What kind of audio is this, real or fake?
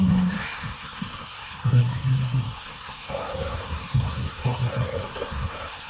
fake